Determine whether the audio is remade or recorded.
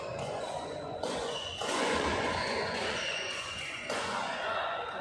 remade